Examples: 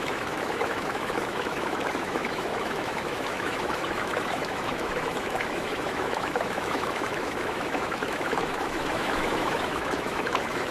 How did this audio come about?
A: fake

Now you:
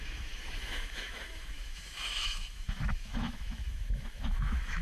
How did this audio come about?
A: fake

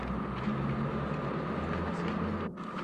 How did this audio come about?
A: real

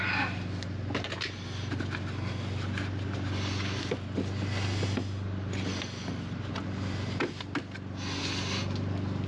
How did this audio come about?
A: real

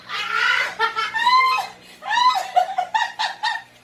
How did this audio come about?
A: real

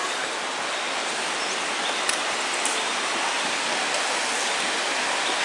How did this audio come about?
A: real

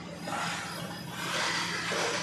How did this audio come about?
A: real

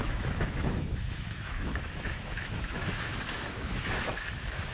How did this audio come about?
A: fake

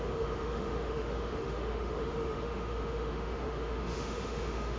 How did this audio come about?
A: fake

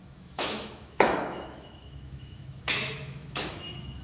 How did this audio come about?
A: fake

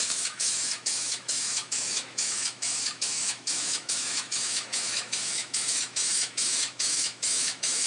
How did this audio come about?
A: fake